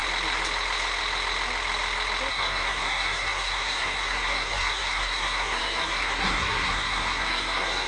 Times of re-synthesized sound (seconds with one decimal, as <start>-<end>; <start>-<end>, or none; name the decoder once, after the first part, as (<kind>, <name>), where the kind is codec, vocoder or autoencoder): 2.3-7.9 (codec, SNAC)